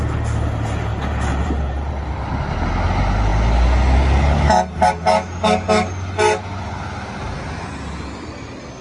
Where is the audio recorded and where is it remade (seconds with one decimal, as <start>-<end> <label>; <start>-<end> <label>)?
0.0-0.9 recorded; 0.9-1.9 remade; 1.9-8.8 recorded